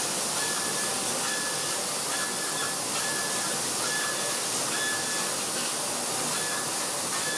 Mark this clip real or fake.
real